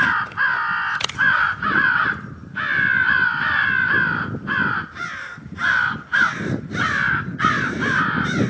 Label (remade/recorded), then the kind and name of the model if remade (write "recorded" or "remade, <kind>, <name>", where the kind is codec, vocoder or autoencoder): recorded